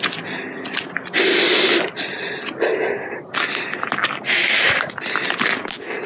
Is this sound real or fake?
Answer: real